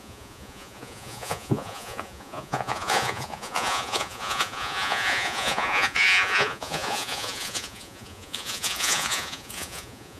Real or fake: fake